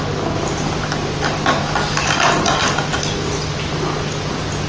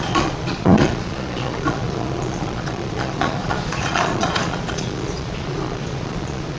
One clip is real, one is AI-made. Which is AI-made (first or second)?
second